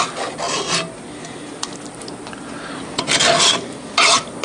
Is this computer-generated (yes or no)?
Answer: no